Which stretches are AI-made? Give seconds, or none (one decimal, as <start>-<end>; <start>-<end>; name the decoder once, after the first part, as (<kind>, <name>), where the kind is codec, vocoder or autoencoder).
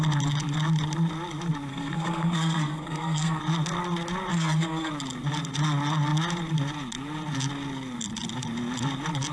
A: 1.7-3.4 (codec, SNAC); 4.3-4.9